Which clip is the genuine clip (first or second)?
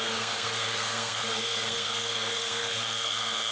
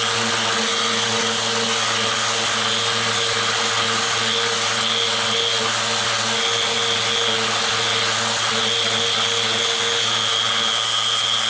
second